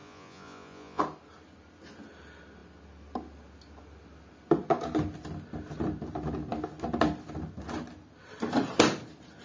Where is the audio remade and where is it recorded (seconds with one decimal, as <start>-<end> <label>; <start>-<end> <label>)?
0.0-1.0 remade; 1.0-9.4 recorded